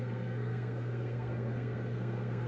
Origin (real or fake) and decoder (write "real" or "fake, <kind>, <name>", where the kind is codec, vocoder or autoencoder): fake, codec, SNAC